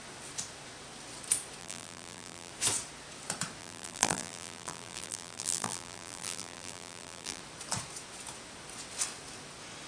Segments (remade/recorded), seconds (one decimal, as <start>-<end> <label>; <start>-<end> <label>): 0.0-1.6 recorded; 1.6-2.5 remade; 2.5-3.6 recorded; 3.6-7.4 remade; 7.4-9.9 recorded

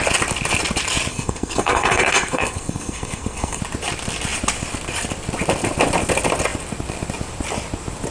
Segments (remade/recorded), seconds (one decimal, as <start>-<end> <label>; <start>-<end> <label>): 0.0-1.1 recorded; 1.1-3.6 remade; 3.6-8.1 recorded

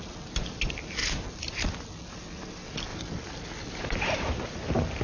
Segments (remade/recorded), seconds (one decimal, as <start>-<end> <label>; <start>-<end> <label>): 0.0-5.0 recorded

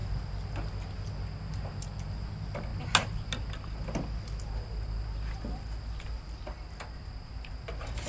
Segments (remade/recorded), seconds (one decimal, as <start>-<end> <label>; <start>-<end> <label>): 0.0-8.1 recorded